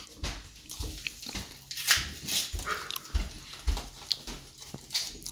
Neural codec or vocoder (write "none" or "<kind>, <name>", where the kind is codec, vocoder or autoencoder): none